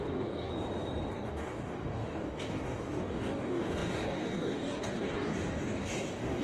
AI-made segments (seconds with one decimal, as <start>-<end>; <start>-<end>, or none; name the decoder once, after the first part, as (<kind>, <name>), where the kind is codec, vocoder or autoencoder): 0.0-0.5 (codec, DAC); 1.1-6.4